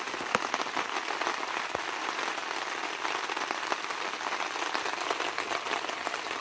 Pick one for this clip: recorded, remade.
recorded